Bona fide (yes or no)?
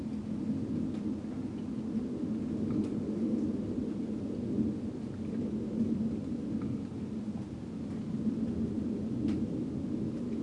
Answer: yes